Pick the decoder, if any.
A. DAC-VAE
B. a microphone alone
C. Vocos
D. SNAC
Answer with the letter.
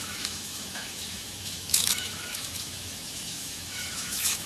A